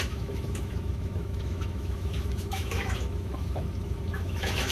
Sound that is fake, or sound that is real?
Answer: fake